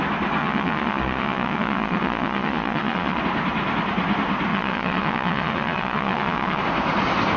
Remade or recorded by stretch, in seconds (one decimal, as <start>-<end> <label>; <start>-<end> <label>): 0.0-0.4 recorded; 0.4-3.2 remade; 3.2-4.5 recorded; 4.5-6.6 remade; 6.6-7.4 recorded